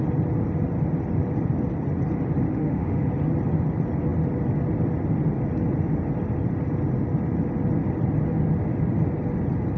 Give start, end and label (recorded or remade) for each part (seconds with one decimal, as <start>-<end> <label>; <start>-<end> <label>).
0.0-2.5 recorded; 2.5-3.1 remade; 3.1-9.8 recorded